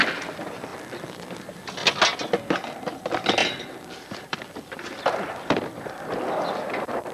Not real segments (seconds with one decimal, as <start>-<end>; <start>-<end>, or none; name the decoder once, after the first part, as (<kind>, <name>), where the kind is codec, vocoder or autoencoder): 3.4-6.0 (vocoder, BigVGAN v2)